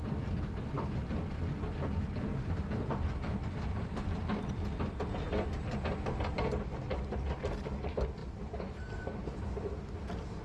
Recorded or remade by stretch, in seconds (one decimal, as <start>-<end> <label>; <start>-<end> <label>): 0.0-2.3 recorded; 2.3-4.5 remade; 4.5-8.2 recorded; 8.2-9.3 remade; 9.3-10.4 recorded

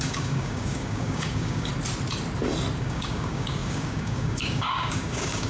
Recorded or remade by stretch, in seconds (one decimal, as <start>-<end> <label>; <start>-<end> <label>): 0.0-1.7 remade; 1.7-2.8 recorded; 2.8-5.5 remade

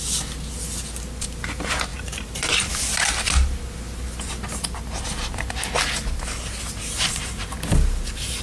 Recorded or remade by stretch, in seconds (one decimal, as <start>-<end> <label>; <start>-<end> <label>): 0.0-1.9 recorded; 1.9-2.7 remade; 2.7-6.8 recorded; 6.8-7.5 remade; 7.5-8.4 recorded

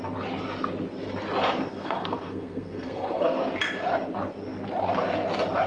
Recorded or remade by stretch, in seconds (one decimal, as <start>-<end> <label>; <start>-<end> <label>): 0.0-1.7 recorded; 1.7-3.4 remade; 3.4-5.7 recorded

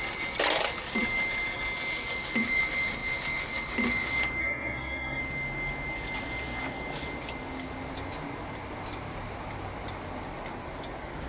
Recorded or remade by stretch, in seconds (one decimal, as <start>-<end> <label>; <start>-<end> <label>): 0.0-4.4 recorded; 4.4-5.2 remade; 5.2-11.3 recorded

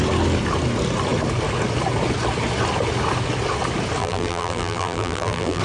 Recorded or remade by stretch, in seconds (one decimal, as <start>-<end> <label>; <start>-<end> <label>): 0.0-4.0 recorded; 4.0-5.6 remade

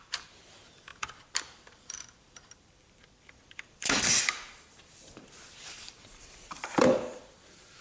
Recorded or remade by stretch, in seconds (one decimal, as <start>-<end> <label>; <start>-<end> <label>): 0.0-7.8 remade